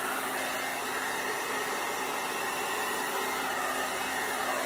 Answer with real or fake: real